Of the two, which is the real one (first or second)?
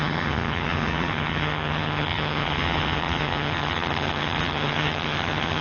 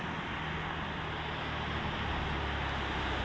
second